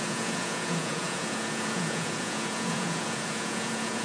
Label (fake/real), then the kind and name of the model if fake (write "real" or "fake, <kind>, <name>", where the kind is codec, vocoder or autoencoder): fake, vocoder, Vocos